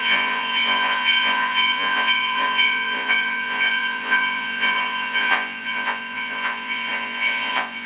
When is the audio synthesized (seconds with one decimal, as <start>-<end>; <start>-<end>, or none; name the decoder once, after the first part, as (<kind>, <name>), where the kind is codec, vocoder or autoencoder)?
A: 0.0-7.9 (vocoder, Vocos)